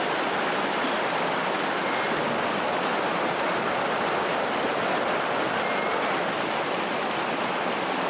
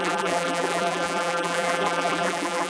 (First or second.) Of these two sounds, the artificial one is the second